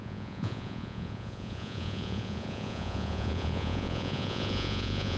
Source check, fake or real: fake